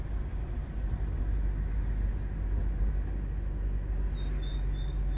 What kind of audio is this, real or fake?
real